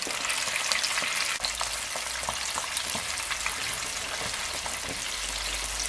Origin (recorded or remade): recorded